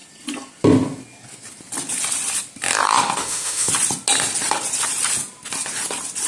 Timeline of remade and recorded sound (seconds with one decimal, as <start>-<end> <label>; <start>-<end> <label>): 0.0-3.2 recorded; 3.2-3.7 remade; 3.7-6.3 recorded